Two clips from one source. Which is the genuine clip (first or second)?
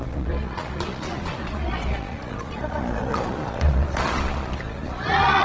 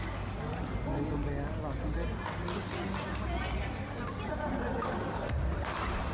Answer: second